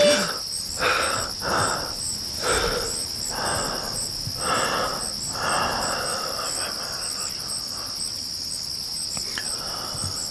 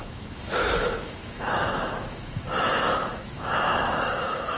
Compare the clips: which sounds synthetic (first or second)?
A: second